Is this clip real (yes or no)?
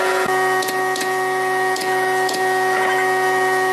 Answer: no